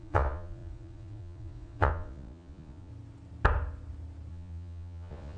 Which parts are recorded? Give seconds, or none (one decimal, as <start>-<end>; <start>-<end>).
2.9-4.3